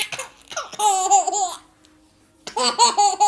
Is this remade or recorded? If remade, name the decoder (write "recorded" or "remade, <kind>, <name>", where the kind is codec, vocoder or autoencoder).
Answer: recorded